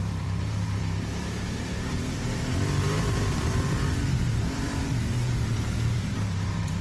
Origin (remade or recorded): remade